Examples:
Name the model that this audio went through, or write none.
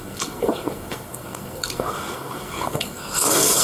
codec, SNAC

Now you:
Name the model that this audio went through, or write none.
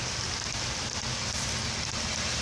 none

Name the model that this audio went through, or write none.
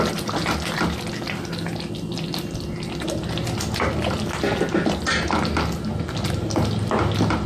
none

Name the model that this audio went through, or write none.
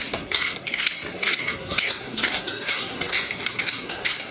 codec, SNAC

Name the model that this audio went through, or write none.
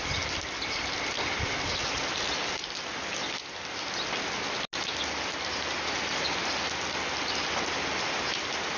none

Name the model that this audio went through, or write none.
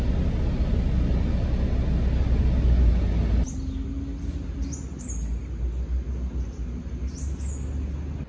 none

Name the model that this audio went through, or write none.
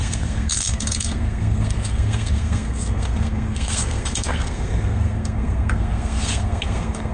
codec, SNAC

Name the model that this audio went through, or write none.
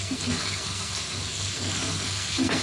codec, SNAC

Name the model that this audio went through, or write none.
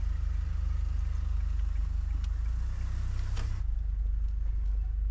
none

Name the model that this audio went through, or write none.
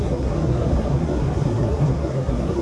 codec, SNAC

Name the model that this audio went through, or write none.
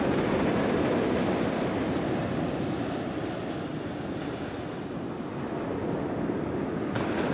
none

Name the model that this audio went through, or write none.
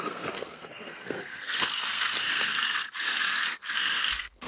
codec, SNAC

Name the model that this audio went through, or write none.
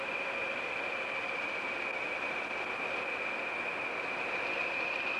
none